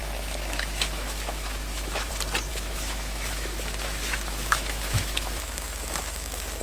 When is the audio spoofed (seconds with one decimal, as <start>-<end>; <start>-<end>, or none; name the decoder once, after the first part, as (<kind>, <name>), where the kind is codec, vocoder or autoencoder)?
0.0-2.1 (autoencoder, DAC-VAE); 2.5-6.6